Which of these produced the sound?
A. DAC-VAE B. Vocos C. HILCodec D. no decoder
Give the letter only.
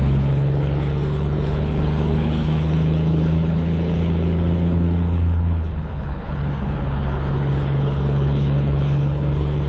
C